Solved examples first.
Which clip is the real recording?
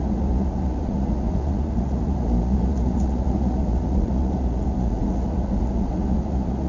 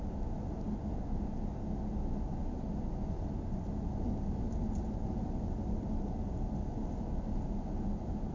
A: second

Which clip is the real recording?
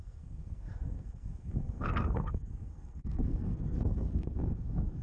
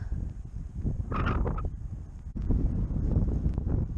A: second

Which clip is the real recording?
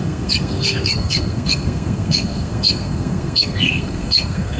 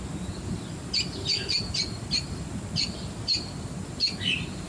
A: second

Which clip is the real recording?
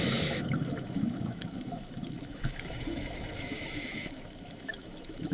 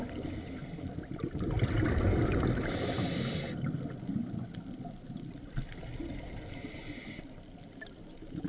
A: second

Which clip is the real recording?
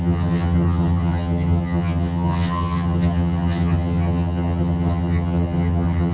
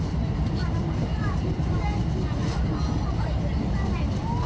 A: second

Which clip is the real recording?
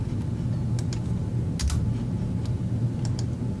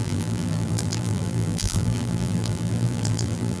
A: first